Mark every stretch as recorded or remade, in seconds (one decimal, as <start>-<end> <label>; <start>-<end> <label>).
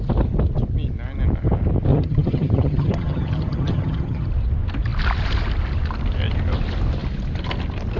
0.0-1.9 recorded; 1.9-4.3 remade; 4.3-8.0 recorded